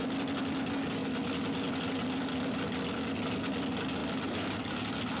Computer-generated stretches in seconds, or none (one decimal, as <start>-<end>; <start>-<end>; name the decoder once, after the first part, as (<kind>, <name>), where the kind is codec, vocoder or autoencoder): none